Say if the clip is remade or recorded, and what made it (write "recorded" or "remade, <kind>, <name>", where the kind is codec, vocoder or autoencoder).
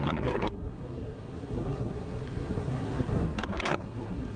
remade, codec, SNAC